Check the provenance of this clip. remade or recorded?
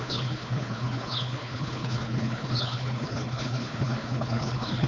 remade